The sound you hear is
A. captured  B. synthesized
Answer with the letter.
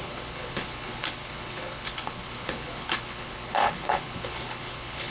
B